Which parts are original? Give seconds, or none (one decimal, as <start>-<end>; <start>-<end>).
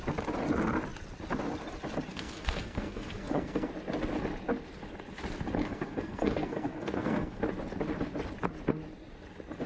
0.0-2.1; 3.7-5.6; 7.4-9.7